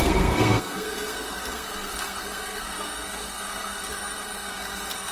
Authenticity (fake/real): fake